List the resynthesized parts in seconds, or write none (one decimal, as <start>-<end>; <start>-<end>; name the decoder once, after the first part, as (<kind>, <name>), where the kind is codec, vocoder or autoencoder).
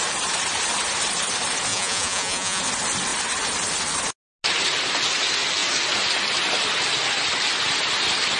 1.7-2.6 (vocoder, Vocos)